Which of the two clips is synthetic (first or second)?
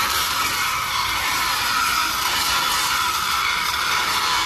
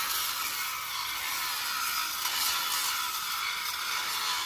first